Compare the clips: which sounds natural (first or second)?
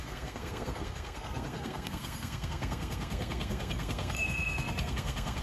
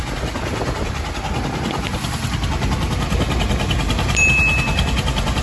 second